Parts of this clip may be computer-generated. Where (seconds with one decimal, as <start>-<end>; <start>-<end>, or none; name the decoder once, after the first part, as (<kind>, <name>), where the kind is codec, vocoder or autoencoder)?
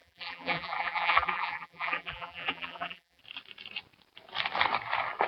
0.0-3.2 (vocoder, BigVGAN v2)